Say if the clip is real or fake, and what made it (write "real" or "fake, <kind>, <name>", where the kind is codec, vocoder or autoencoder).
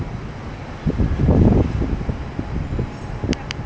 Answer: real